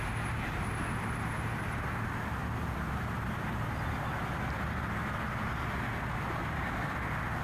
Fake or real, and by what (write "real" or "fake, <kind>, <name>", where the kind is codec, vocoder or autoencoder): real